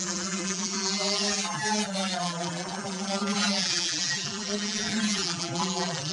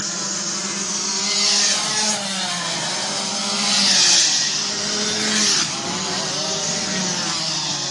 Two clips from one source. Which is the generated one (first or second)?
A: first